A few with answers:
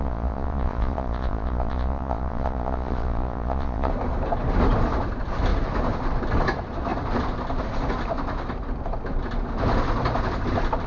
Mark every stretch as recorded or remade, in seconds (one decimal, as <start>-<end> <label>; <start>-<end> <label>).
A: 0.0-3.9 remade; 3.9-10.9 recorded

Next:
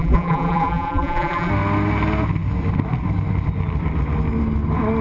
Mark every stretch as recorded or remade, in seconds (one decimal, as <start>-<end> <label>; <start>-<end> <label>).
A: 0.0-1.5 remade; 1.5-5.0 recorded

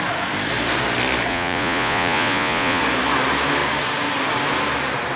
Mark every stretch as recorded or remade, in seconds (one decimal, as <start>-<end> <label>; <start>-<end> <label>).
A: 0.0-1.3 recorded; 1.3-2.8 remade; 2.8-5.2 recorded